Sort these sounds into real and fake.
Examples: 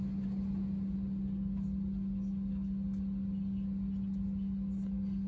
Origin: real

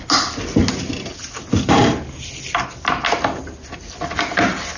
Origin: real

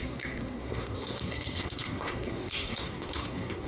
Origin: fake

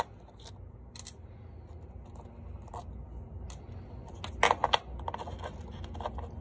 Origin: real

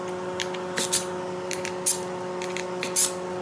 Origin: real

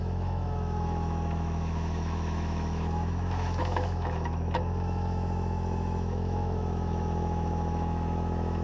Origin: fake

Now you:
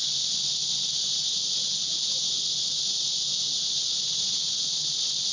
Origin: real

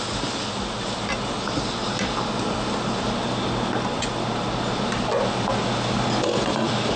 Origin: real